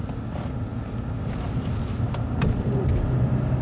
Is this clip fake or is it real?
real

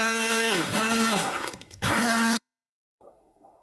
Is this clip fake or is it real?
fake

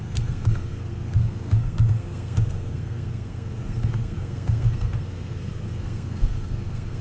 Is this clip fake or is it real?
fake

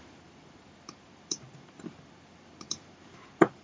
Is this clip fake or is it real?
fake